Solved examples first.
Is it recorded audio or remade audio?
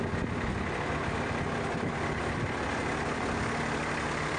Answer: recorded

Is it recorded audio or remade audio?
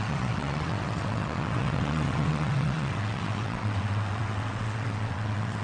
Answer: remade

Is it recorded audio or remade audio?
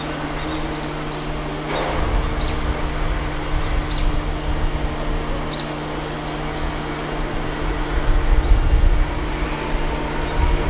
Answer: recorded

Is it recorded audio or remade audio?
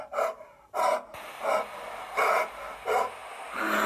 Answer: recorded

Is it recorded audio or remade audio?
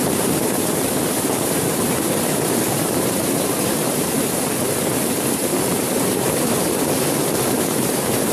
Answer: remade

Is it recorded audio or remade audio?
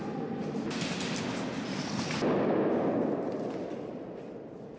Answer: recorded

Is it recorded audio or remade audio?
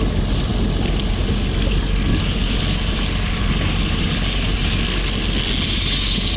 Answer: recorded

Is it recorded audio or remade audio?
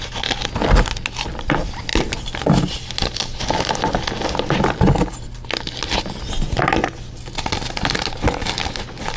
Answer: recorded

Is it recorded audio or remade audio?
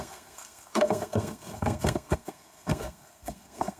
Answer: remade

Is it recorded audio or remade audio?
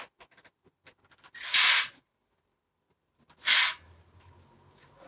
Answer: recorded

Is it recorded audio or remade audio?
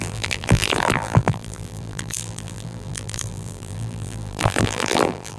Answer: remade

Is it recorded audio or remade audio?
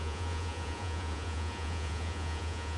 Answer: remade